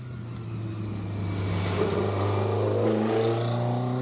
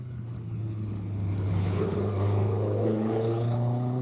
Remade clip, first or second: second